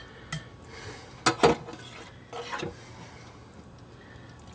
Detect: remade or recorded recorded